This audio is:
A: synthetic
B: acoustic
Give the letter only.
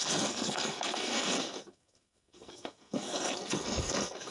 A